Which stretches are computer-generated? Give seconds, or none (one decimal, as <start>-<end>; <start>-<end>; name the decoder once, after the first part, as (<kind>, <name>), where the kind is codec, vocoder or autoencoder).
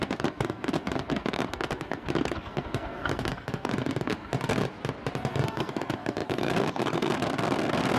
0.0-4.6 (codec, SNAC); 5.2-8.0